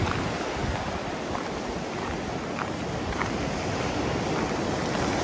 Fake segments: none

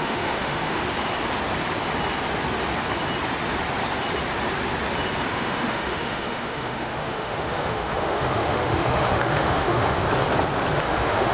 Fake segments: 0.0-0.8 (autoencoder, DAC-VAE); 5.3-10.0; 10.8-11.3

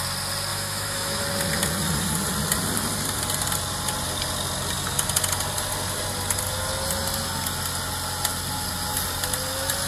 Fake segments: 0.5-1.2 (autoencoder, DAC-VAE)

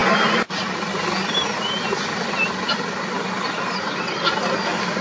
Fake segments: none

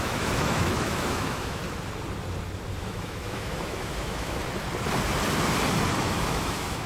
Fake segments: 0.0-1.6 (autoencoder, DAC-VAE); 2.8-4.4; 5.9-6.9

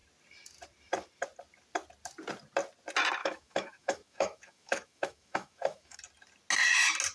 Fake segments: 3.2-6.0 (autoencoder, DAC-VAE)

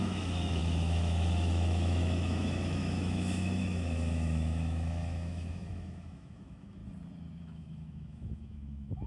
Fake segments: 0.0-6.8 (autoencoder, DAC-VAE); 7.4-9.1